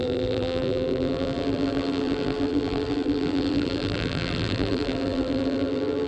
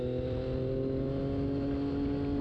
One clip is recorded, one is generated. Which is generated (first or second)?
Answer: first